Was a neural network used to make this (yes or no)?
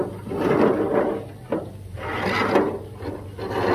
no